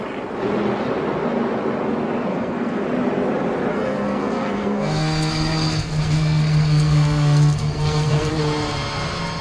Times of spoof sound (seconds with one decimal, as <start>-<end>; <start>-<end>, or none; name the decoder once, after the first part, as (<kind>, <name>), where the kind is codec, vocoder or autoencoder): 2.3-2.8 (codec, SNAC); 3.7-8.3